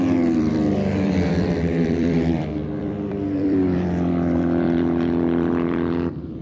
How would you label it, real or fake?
fake